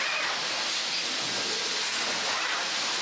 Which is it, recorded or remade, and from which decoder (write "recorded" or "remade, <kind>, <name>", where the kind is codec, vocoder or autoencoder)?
recorded